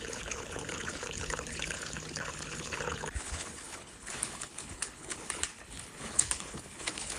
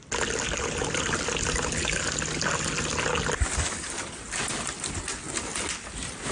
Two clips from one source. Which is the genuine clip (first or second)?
second